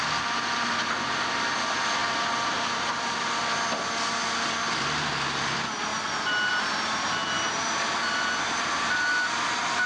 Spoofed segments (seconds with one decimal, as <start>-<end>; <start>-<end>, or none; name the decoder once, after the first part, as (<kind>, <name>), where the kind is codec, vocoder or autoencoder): none